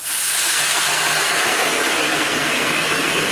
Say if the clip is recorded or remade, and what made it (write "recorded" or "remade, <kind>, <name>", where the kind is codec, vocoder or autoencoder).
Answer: remade, codec, SNAC